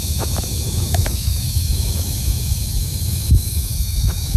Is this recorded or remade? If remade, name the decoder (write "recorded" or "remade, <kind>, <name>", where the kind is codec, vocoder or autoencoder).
remade, autoencoder, DAC-VAE